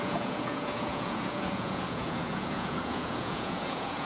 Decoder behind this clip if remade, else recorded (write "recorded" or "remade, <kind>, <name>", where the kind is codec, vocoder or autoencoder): remade, vocoder, Vocos